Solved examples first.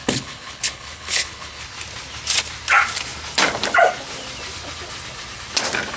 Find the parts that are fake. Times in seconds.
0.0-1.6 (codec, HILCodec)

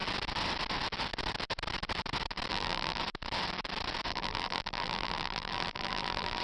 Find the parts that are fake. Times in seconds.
2.5-3.0 (vocoder, BigVGAN v2); 4.1-6.4

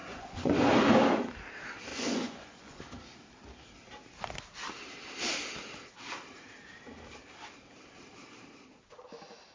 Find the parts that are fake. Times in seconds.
0.0-0.5 (vocoder, Vocos); 1.9-2.8

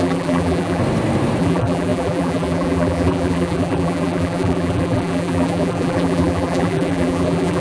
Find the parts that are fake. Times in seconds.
0.0-0.8 (vocoder, BigVGAN v2); 1.4-7.6

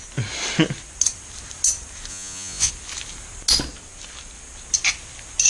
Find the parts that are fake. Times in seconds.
2.1-2.7 (vocoder, Vocos)